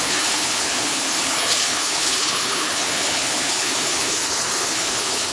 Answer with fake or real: fake